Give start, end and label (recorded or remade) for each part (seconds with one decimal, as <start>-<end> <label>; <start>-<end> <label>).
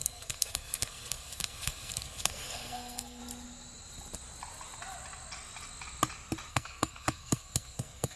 0.0-3.2 remade; 3.2-6.5 recorded; 6.5-8.2 remade